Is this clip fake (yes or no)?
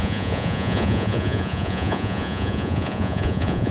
yes